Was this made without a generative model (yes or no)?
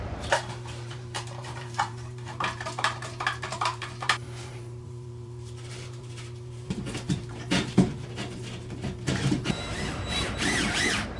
no